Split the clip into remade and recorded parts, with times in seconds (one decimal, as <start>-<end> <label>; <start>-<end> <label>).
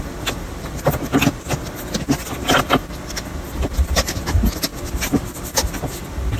0.0-6.4 recorded